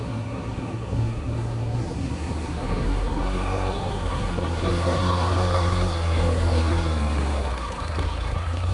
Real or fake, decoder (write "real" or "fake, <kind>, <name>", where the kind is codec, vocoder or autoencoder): fake, codec, SNAC